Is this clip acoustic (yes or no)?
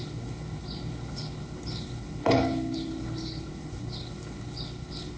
no